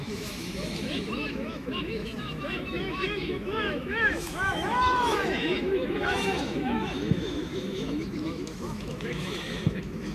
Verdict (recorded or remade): remade